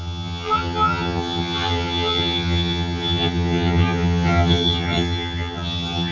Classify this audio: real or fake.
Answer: fake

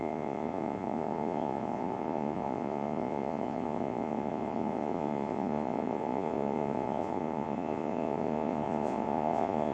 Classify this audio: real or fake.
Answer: fake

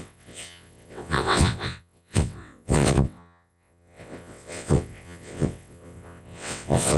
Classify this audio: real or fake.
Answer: fake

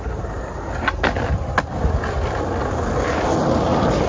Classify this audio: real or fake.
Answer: real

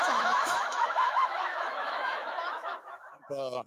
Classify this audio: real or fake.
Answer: fake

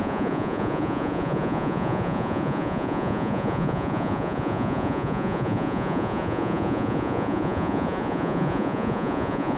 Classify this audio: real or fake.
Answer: fake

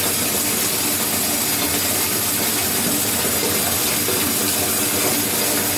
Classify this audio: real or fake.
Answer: real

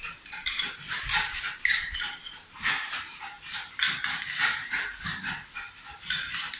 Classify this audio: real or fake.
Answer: fake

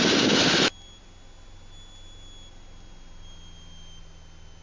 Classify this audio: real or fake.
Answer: real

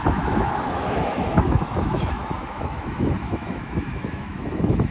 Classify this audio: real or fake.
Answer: fake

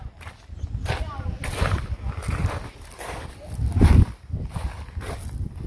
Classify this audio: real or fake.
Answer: real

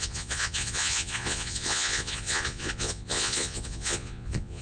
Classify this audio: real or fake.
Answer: fake